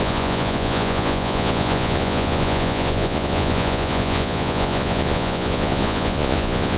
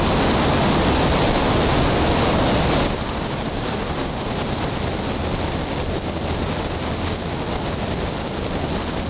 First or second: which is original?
second